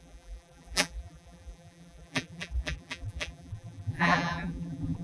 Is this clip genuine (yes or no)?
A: no